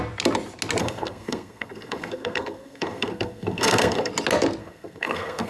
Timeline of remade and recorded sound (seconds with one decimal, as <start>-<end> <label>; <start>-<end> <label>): 0.0-0.8 recorded; 0.8-4.1 remade; 4.1-4.6 recorded; 4.6-5.5 remade